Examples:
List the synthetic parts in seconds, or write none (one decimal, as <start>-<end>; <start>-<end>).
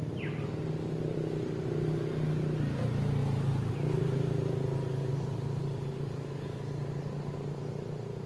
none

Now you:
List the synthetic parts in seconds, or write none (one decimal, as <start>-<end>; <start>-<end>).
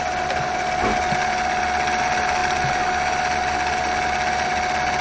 none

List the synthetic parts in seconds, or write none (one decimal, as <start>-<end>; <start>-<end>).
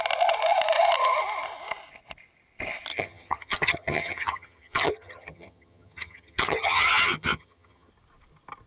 2.9-7.9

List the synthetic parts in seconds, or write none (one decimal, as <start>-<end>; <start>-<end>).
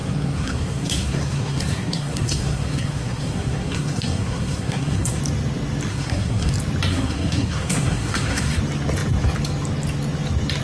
0.0-5.2; 5.9-6.5; 6.9-8.6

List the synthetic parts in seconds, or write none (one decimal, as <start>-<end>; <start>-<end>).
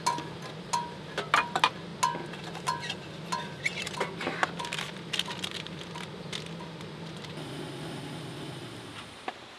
none